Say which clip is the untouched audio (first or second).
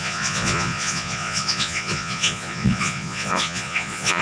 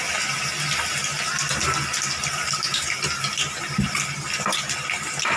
second